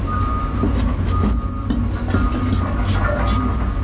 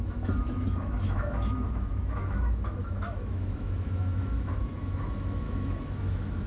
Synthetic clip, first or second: second